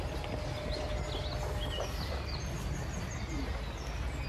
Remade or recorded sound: recorded